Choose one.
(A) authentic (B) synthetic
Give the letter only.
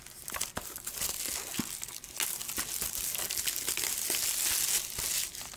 A